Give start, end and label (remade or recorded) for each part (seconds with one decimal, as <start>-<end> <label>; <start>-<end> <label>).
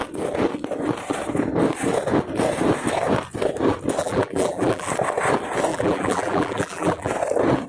0.0-4.0 recorded; 4.0-4.9 remade; 4.9-5.7 recorded; 5.7-7.1 remade; 7.1-7.7 recorded